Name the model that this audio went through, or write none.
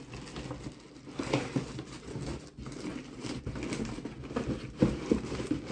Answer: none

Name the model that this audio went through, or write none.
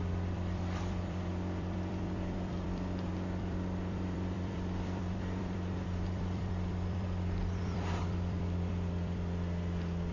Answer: vocoder, BigVGAN v2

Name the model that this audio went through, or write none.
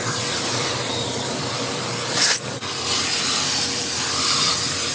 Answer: vocoder, BigVGAN v2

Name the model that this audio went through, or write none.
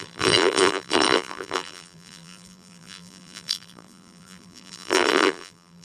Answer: vocoder, BigVGAN v2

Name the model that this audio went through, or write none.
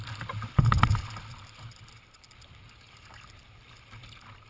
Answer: vocoder, BigVGAN v2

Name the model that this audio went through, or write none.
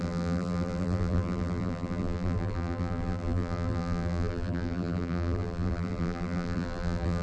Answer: vocoder, BigVGAN v2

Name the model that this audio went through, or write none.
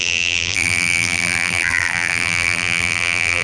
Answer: vocoder, BigVGAN v2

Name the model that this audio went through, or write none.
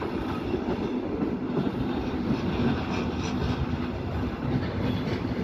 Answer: none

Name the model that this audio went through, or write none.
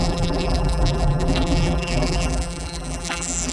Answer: vocoder, BigVGAN v2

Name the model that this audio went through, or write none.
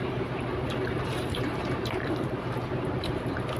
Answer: vocoder, BigVGAN v2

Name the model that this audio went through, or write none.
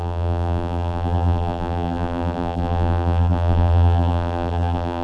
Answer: vocoder, BigVGAN v2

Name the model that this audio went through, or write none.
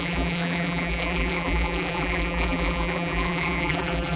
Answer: vocoder, BigVGAN v2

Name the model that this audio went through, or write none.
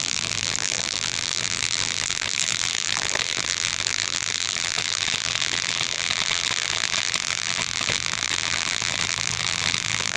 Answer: vocoder, BigVGAN v2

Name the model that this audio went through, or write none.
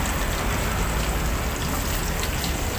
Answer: none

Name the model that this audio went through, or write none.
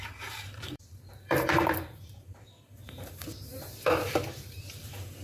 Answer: vocoder, BigVGAN v2